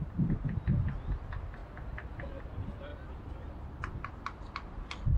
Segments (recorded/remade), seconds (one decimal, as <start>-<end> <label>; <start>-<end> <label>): 0.0-5.2 recorded